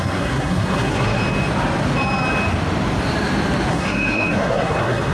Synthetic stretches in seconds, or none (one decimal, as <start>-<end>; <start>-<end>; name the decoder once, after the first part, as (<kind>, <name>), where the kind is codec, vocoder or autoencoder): 0.0-1.2 (codec, SNAC); 3.7-5.1